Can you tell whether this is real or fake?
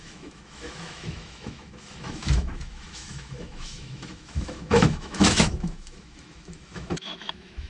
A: fake